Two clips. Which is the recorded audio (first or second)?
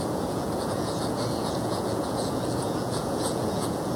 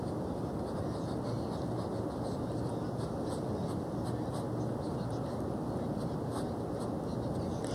second